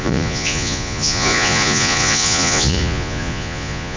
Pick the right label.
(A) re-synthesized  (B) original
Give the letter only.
A